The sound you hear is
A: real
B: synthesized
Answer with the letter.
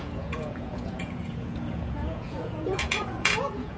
B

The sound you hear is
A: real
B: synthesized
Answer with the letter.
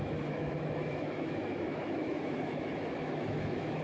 B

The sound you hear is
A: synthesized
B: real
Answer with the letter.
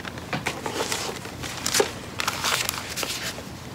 B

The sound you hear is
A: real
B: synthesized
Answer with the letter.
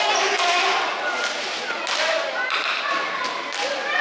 A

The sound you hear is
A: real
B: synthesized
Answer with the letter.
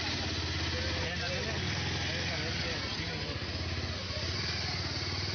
A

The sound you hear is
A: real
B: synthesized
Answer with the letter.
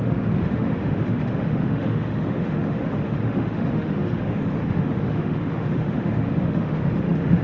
B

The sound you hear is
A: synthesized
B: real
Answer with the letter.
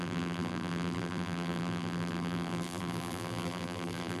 A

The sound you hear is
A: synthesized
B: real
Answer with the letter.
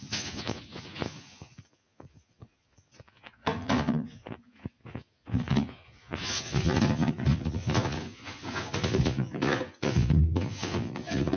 A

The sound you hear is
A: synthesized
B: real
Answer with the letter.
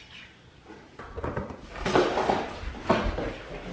B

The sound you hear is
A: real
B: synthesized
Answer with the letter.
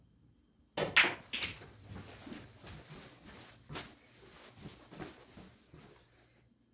A